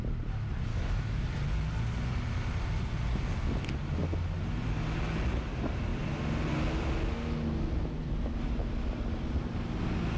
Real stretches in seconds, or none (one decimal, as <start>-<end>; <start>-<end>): 0.0-0.7; 1.2-10.2